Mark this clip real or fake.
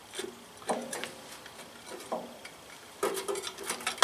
real